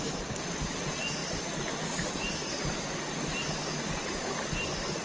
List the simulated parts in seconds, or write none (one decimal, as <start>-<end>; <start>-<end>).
none